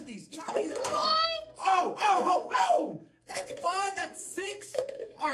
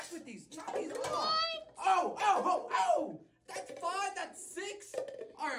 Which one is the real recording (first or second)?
second